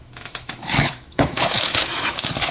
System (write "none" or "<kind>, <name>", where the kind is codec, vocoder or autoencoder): autoencoder, DAC-VAE